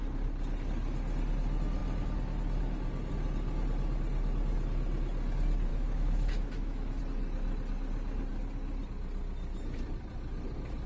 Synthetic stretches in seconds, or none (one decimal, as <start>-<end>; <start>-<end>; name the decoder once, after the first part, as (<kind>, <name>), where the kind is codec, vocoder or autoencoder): 5.7-7.0 (autoencoder, DAC-VAE)